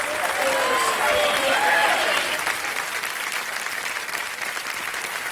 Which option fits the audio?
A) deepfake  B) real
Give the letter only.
B